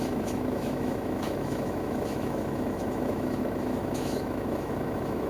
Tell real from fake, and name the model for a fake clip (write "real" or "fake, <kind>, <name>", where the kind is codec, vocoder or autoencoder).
fake, autoencoder, DAC-VAE